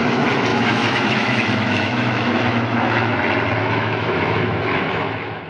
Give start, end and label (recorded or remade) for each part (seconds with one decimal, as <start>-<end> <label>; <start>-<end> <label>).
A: 0.0-0.5 recorded; 0.5-3.1 remade; 3.1-3.6 recorded; 3.6-5.5 remade